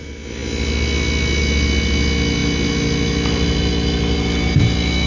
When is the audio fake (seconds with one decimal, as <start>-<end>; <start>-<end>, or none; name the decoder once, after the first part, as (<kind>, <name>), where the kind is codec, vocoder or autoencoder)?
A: none